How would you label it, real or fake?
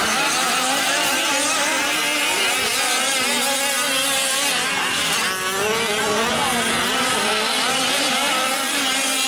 real